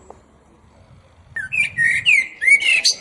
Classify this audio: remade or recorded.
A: recorded